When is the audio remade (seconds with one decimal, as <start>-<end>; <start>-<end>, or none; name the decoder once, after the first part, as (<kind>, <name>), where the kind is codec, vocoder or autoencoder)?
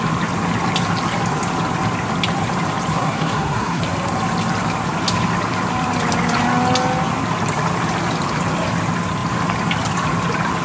2.9-3.8 (codec, SNAC)